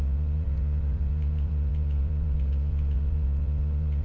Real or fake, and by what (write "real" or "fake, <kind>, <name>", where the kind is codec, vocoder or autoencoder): fake, vocoder, Vocos